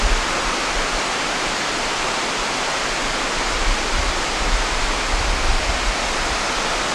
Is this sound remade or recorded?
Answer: recorded